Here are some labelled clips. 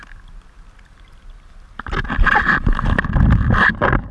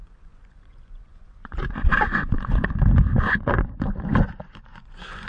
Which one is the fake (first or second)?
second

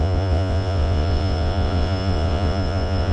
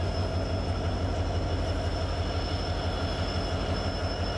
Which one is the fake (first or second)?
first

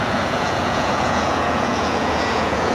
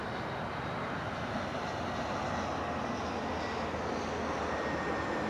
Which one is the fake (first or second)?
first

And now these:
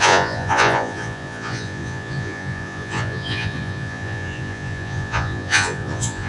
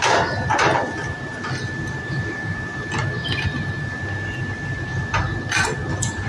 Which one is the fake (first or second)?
first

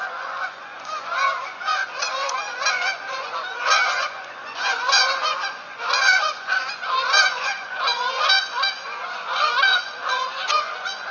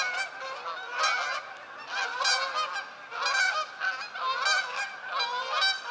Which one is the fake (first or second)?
first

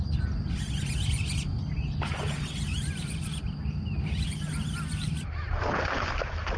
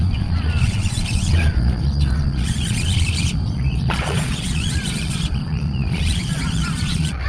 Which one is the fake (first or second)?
second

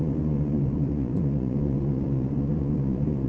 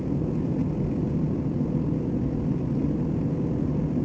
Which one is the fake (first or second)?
first